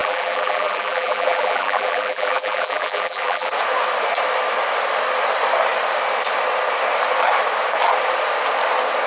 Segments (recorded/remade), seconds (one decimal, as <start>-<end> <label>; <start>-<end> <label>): 0.0-3.5 remade; 3.5-9.1 recorded